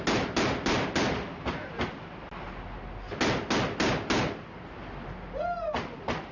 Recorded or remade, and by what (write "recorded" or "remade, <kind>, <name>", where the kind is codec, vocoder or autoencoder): recorded